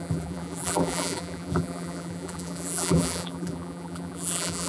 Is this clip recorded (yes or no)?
no